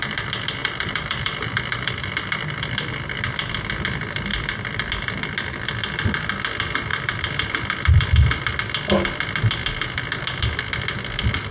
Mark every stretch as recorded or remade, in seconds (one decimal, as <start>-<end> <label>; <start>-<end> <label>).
0.0-0.6 recorded; 0.6-2.1 remade; 2.1-4.3 recorded; 4.3-4.9 remade; 4.9-6.9 recorded; 6.9-8.5 remade; 8.5-11.5 recorded